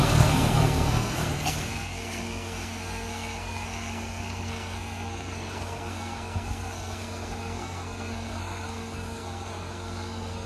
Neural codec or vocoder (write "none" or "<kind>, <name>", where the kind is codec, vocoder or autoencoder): codec, SNAC